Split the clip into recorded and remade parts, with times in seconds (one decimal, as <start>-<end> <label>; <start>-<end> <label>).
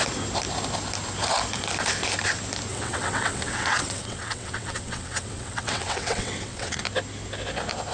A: 0.0-2.7 recorded; 2.7-6.8 remade; 6.8-7.9 recorded